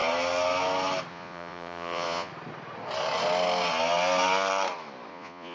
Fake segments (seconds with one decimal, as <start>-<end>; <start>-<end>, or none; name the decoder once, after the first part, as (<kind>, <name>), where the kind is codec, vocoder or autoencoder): 1.1-2.3 (vocoder, Vocos); 5.1-5.5